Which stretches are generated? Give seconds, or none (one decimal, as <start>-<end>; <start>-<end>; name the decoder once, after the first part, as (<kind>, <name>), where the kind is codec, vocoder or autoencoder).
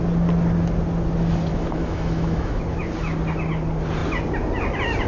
1.5-2.6 (autoencoder, DAC-VAE)